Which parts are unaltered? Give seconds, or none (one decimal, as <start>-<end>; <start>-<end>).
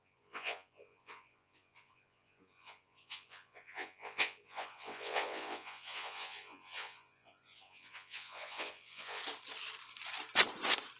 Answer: 9.2-11.0